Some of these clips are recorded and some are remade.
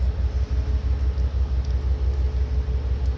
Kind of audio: recorded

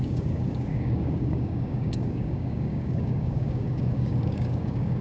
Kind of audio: remade